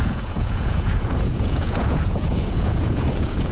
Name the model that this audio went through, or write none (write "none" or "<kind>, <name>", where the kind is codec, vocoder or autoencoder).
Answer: vocoder, Vocos